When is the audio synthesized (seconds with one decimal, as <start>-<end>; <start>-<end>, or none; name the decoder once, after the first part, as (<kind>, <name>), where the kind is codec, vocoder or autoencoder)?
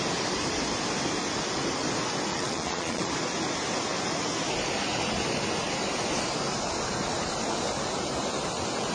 2.3-3.1 (vocoder, Vocos)